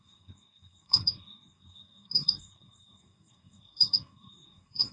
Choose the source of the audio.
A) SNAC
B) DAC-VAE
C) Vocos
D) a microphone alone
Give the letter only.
A